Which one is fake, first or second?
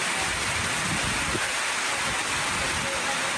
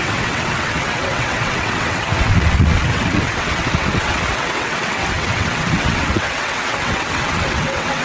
second